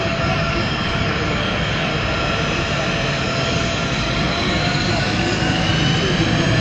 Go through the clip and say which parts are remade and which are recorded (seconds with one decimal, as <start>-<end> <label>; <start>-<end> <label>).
0.0-1.9 remade; 1.9-3.2 recorded; 3.2-5.7 remade; 5.7-6.6 recorded

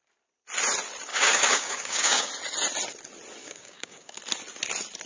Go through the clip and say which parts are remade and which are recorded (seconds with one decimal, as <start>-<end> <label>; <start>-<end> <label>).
0.0-1.1 recorded; 1.1-2.3 remade; 2.3-3.4 recorded; 3.4-4.2 remade; 4.2-5.1 recorded

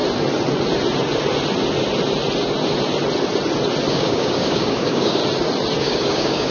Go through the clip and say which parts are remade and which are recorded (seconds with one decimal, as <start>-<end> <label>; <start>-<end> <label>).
0.0-3.9 recorded; 3.9-5.2 remade; 5.2-5.8 recorded; 5.8-6.5 remade

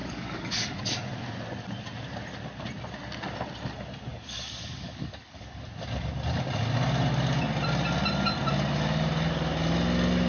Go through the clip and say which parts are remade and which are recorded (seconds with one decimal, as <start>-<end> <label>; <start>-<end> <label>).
0.0-0.8 remade; 0.8-4.1 recorded; 4.1-5.6 remade; 5.6-10.3 recorded

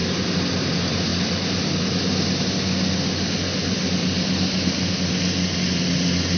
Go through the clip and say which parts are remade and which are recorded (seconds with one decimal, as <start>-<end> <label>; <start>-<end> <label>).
0.0-6.4 recorded

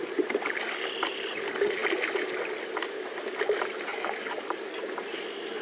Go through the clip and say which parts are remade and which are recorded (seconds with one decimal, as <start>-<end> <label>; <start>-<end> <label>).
0.0-3.9 recorded; 3.9-4.8 remade; 4.8-5.6 recorded

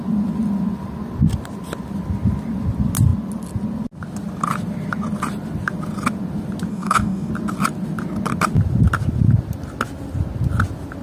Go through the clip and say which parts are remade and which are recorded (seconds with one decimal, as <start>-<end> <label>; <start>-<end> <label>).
0.0-6.7 recorded; 6.7-7.3 remade; 7.3-11.0 recorded